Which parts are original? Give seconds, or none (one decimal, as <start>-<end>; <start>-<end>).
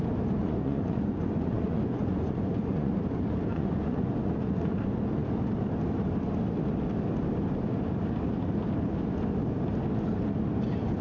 0.0-0.4; 2.9-3.5; 5.4-11.0